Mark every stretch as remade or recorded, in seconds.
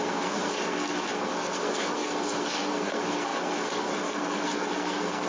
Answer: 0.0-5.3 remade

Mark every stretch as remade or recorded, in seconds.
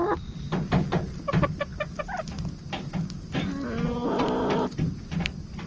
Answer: 0.0-5.7 recorded